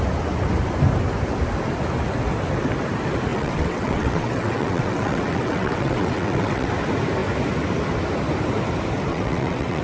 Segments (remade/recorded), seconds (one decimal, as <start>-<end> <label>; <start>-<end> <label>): 0.0-3.3 recorded; 3.3-6.7 remade; 6.7-9.1 recorded; 9.1-9.8 remade